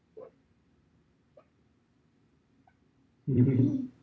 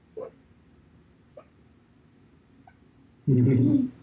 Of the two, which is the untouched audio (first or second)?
second